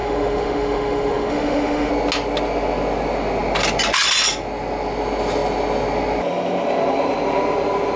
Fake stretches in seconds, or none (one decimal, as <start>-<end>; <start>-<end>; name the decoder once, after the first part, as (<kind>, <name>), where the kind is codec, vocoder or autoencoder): 0.0-1.9 (autoencoder, DAC-VAE)